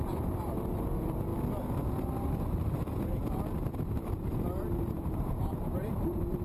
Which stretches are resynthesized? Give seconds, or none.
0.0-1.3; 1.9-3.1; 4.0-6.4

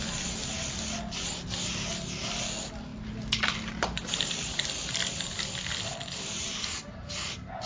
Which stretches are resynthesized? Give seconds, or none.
none

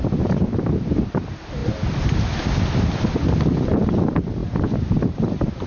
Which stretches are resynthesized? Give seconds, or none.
4.4-5.7

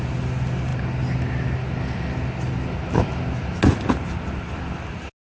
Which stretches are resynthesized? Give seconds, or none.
none

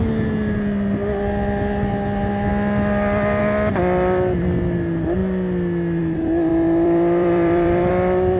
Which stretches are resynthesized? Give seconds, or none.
6.5-7.9

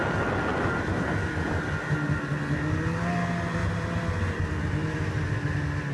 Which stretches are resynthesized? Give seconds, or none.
0.5-1.5; 3.6-5.1